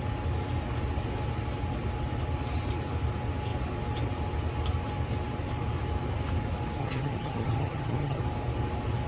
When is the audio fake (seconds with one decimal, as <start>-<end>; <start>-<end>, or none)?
6.8-8.2